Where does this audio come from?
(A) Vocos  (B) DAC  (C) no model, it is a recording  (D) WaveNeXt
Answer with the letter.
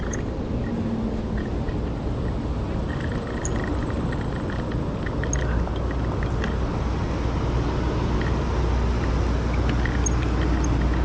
C